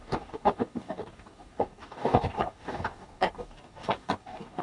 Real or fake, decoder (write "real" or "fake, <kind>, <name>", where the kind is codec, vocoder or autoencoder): fake, codec, DAC